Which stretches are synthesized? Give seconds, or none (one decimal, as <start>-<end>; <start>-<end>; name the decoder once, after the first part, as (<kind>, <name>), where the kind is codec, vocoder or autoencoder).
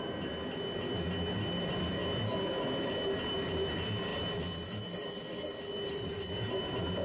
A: none